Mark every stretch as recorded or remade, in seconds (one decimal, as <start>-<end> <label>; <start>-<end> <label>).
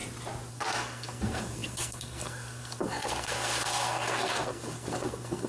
0.0-0.5 recorded; 0.5-5.5 remade